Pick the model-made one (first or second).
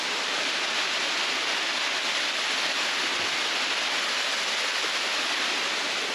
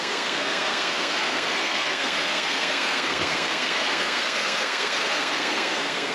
second